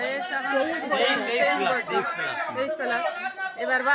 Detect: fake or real real